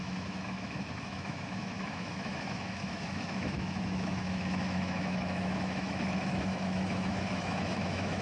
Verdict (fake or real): fake